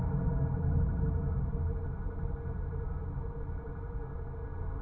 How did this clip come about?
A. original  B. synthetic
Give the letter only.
A